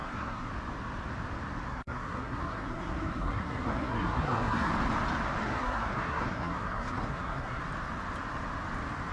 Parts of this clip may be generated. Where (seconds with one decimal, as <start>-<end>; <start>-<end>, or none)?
0.0-0.5; 1.7-4.7; 5.4-7.6